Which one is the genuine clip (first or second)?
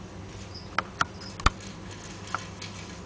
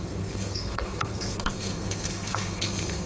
first